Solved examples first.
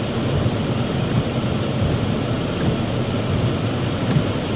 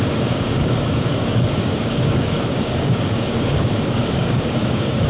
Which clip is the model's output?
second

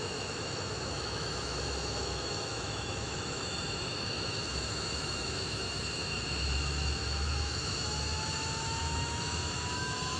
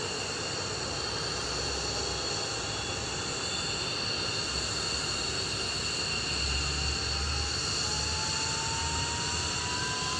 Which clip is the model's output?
first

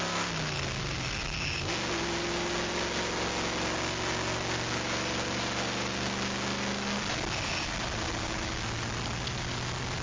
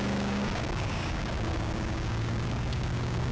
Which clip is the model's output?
second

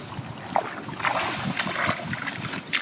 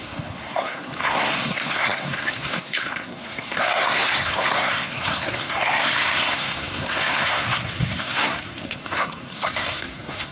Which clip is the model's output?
second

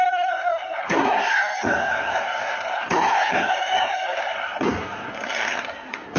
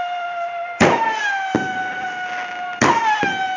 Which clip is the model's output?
first